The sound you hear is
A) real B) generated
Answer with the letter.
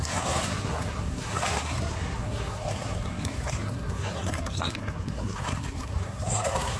B